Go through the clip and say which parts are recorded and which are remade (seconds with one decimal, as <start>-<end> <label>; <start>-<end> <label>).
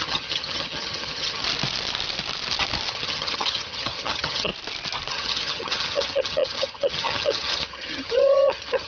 0.0-1.4 remade; 1.4-2.9 recorded; 2.9-4.5 remade; 4.5-5.1 recorded; 5.1-8.9 remade